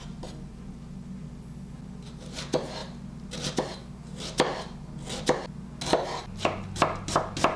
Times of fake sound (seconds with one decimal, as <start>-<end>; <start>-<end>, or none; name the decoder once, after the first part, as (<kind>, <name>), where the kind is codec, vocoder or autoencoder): none